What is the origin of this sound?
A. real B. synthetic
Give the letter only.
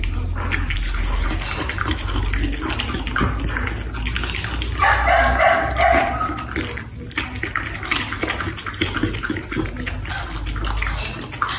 A